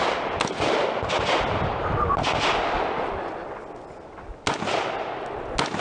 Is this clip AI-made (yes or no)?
no